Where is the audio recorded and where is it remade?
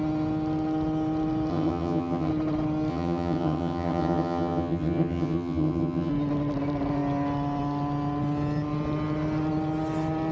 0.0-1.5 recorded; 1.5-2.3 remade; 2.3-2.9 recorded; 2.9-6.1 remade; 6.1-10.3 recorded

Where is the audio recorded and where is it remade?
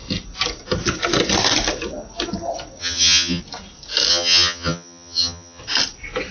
0.0-2.8 recorded; 2.8-3.4 remade; 3.4-4.1 recorded; 4.1-5.6 remade; 5.6-6.3 recorded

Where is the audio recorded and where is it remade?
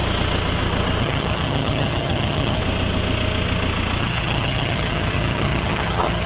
0.0-1.0 recorded; 1.0-2.6 remade; 2.6-4.0 recorded; 4.0-6.3 remade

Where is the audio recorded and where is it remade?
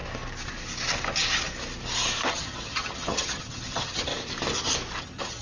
0.0-2.3 recorded; 2.3-4.1 remade; 4.1-5.0 recorded; 5.0-5.4 remade